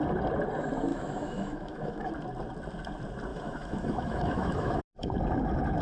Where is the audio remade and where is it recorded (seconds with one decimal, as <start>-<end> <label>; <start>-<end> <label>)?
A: 0.0-0.9 recorded; 0.9-2.1 remade; 2.1-3.3 recorded; 3.3-4.8 remade; 4.8-5.8 recorded